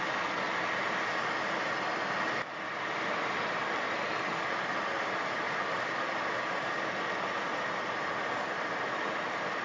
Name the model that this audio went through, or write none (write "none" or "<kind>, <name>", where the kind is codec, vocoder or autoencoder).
none